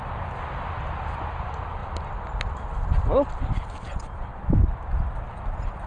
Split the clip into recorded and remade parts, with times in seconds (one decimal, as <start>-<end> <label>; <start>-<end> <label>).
0.0-5.9 recorded